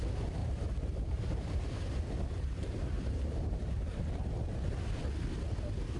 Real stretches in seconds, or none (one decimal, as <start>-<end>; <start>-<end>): 0.0-0.4; 4.0-6.0